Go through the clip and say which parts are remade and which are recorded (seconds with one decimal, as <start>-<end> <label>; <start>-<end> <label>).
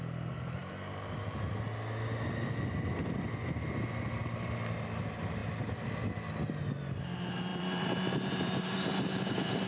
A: 0.0-7.5 recorded; 7.5-9.7 remade